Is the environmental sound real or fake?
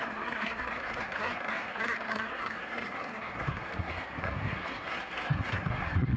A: fake